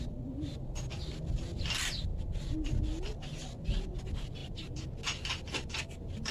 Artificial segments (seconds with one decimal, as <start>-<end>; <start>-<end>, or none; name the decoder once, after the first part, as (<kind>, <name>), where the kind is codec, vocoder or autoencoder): none